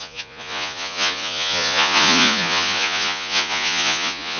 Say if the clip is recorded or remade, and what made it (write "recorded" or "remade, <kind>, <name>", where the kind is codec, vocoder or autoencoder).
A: remade, vocoder, Vocos